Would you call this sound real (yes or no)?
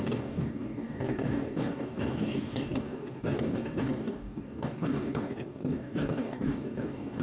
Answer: no